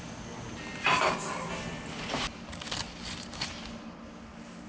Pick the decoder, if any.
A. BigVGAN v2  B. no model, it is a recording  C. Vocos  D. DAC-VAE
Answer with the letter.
B